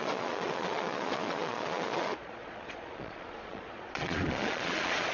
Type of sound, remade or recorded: remade